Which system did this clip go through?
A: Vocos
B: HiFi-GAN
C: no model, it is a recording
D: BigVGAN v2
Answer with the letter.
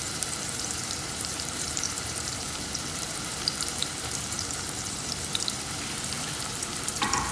D